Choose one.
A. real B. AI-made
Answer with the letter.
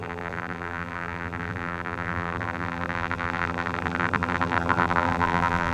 B